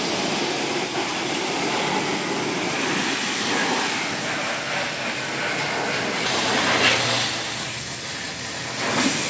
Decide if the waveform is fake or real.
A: real